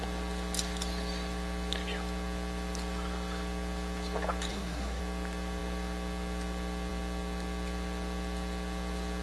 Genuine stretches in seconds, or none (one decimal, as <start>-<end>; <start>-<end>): 0.0-4.5; 5.0-9.2